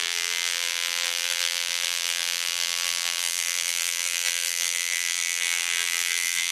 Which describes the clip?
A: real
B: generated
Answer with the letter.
B